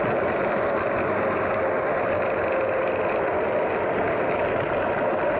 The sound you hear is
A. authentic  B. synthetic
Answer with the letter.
A